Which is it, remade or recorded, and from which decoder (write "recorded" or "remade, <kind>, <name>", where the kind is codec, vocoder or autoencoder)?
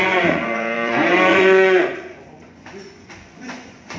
remade, vocoder, Vocos